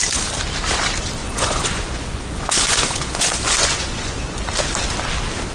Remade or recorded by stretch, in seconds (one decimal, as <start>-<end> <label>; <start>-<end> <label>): 0.0-1.2 recorded; 1.2-4.4 remade; 4.4-5.5 recorded